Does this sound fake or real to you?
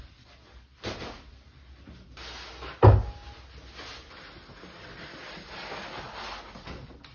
real